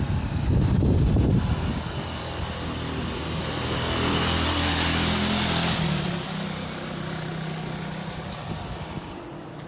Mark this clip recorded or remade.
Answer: recorded